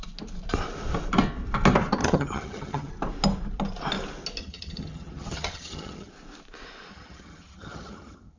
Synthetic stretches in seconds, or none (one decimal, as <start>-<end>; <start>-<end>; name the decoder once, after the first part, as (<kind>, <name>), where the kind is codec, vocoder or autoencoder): 2.0-2.9 (vocoder, HiFi-GAN); 4.4-6.1; 6.9-8.4